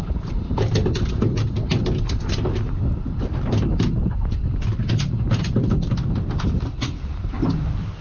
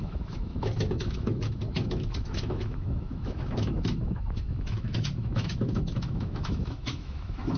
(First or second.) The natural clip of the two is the first